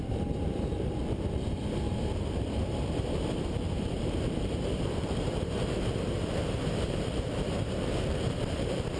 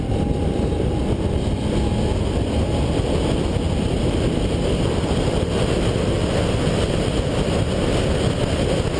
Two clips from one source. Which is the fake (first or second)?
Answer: first